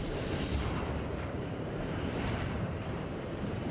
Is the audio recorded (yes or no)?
no